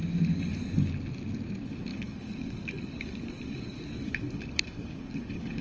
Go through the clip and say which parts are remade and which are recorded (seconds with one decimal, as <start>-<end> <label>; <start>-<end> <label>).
0.0-1.9 recorded; 1.9-5.6 remade

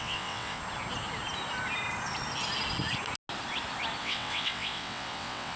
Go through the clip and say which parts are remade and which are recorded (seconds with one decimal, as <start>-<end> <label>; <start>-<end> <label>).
0.0-0.6 remade; 0.6-4.0 recorded; 4.0-5.6 remade

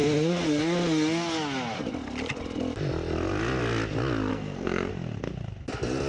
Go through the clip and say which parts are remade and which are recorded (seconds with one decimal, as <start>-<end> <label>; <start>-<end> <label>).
0.0-4.3 recorded; 4.3-4.9 remade; 4.9-6.1 recorded